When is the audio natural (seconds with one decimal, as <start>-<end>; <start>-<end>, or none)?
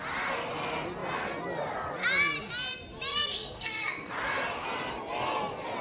0.0-3.1; 4.1-5.8